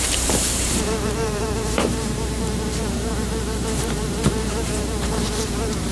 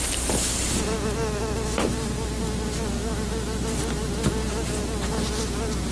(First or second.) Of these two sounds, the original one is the second